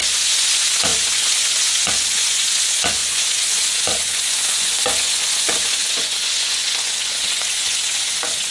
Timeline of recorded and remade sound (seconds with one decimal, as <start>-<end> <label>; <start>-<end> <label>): 0.0-8.5 remade